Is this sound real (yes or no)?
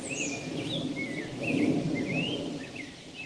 no